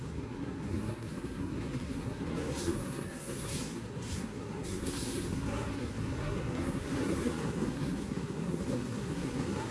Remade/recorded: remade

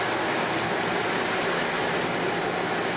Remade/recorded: recorded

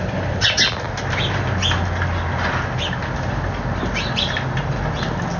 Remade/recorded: recorded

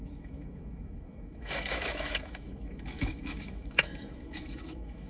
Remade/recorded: remade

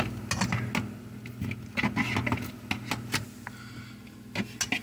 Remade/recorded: recorded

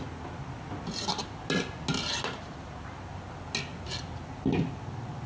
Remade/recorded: recorded